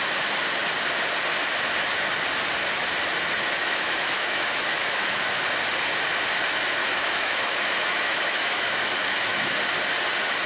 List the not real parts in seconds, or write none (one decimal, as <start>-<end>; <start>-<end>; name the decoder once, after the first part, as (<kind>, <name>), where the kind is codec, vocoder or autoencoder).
3.6-5.3 (autoencoder, DAC-VAE); 6.8-9.4